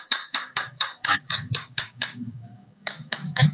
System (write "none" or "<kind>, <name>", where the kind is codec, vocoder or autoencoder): codec, DAC